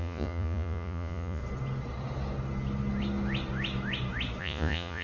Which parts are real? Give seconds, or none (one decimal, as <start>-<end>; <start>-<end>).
1.4-4.4